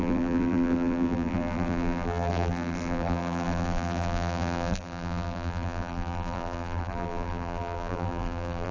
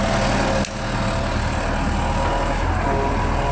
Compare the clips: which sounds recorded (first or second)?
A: second